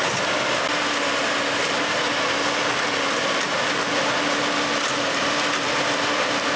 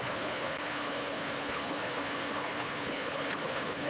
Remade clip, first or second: second